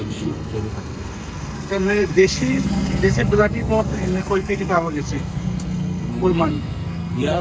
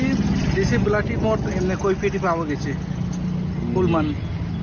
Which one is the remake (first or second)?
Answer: first